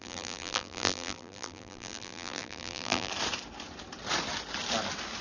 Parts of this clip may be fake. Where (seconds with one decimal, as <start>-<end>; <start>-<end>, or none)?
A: 0.0-3.1